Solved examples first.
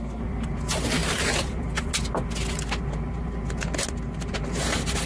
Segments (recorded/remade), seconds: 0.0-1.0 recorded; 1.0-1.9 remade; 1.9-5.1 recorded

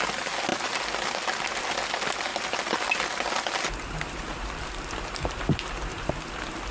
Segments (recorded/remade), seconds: 0.0-6.7 recorded

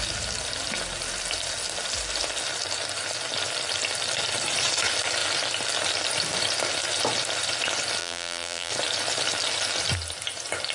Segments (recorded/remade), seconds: 0.0-8.0 recorded; 8.0-8.7 remade; 8.7-10.7 recorded

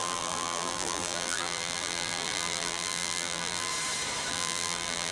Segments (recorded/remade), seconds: 0.0-3.7 remade; 3.7-4.3 recorded; 4.3-5.1 remade